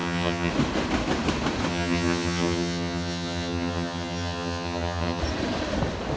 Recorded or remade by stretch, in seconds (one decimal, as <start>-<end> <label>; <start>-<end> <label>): 0.0-0.5 remade; 0.5-1.7 recorded; 1.7-5.2 remade; 5.2-6.2 recorded